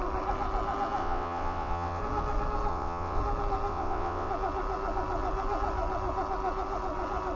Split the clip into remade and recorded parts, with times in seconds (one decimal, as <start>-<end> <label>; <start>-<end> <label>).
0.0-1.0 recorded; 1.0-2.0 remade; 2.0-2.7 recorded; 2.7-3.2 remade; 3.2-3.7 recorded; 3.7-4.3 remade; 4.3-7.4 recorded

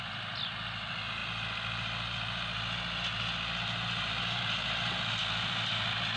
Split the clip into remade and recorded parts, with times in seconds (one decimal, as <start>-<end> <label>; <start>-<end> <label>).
0.0-6.2 recorded

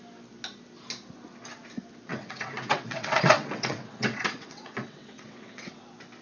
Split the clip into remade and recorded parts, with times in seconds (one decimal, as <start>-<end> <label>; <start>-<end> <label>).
0.0-2.1 recorded; 2.1-5.8 remade; 5.8-6.2 recorded

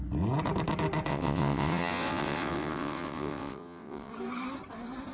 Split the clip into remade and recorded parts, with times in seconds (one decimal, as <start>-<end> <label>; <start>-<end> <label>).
0.0-1.1 recorded; 1.1-4.1 remade; 4.1-5.1 recorded

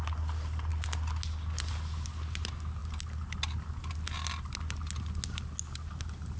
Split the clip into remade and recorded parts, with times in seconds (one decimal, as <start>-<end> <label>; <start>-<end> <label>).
0.0-6.4 recorded

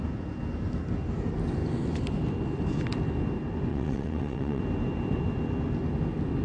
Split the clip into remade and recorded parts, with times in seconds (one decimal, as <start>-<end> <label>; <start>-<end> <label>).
0.0-3.7 recorded; 3.7-4.6 remade; 4.6-6.4 recorded